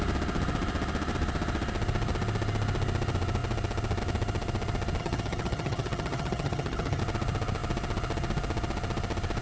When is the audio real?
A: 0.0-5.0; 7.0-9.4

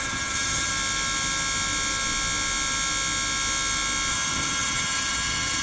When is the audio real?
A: 0.7-4.1

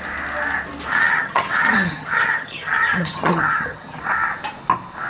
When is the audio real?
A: 0.0-0.9; 4.0-5.1

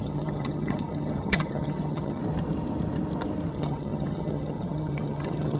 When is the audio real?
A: 2.2-3.5

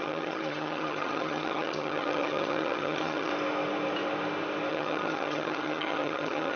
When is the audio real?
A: 3.3-4.7

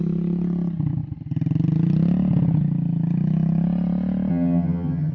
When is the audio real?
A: 0.0-4.3

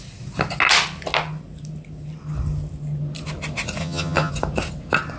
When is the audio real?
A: 0.0-3.8; 4.3-5.2

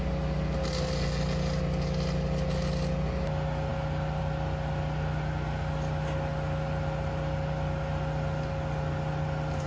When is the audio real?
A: 0.0-9.7